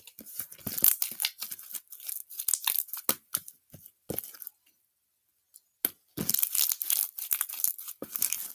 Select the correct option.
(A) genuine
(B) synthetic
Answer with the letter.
A